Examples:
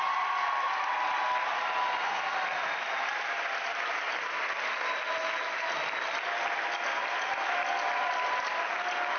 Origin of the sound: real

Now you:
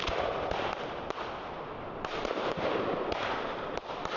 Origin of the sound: real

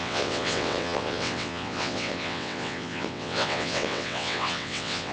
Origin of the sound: fake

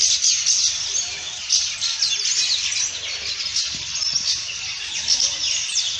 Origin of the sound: real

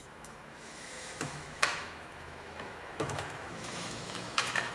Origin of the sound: fake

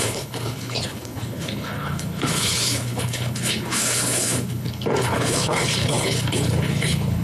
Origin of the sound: fake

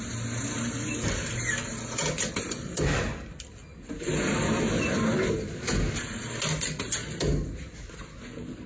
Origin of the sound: real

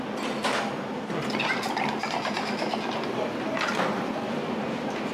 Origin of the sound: real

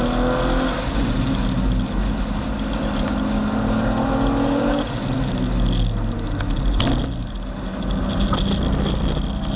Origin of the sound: real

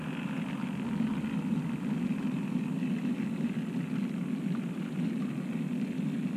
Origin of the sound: real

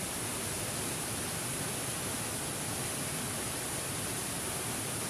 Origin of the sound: real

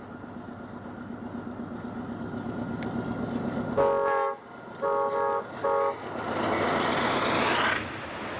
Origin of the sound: real